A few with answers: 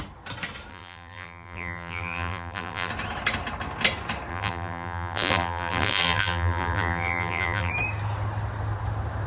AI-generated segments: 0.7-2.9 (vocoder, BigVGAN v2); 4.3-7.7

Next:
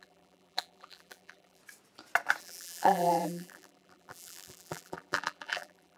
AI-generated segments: 0.0-1.6 (vocoder, BigVGAN v2); 2.4-6.0

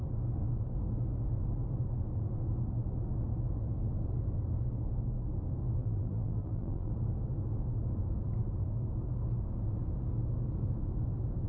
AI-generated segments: 5.8-6.9 (vocoder, BigVGAN v2)

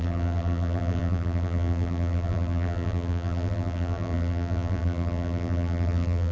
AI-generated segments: 0.0-6.3 (vocoder, BigVGAN v2)

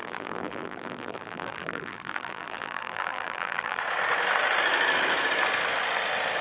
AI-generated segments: 0.0-3.8 (vocoder, BigVGAN v2)

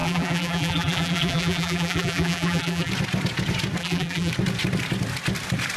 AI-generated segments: 0.0-2.9 (vocoder, BigVGAN v2); 3.8-4.3

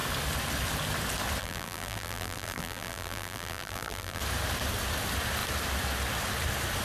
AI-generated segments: 1.4-4.2 (vocoder, BigVGAN v2)

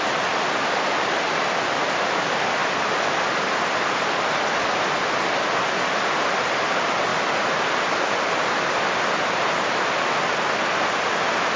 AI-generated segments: 7.1-11.6 (vocoder, BigVGAN v2)